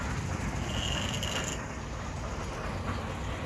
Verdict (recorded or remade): recorded